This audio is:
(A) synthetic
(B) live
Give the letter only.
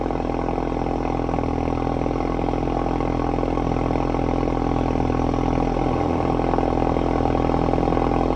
B